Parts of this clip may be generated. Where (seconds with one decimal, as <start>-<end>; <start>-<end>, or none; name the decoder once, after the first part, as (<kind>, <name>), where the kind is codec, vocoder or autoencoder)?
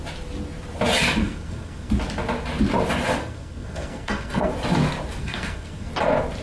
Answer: 1.2-1.9 (codec, SNAC); 3.2-4.5; 5.2-5.9